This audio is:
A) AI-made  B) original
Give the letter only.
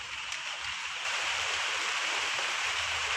A